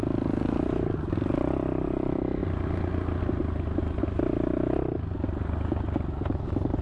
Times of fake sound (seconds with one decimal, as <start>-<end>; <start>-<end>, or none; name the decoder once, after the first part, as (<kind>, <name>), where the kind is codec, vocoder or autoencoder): none